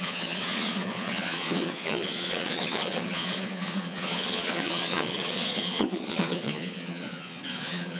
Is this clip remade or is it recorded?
remade